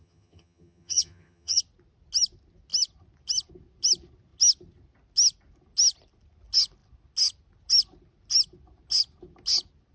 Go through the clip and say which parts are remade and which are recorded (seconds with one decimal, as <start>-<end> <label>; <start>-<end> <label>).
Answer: 0.0-1.6 remade; 1.6-9.9 recorded